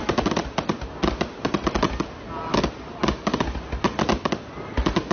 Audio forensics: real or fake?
real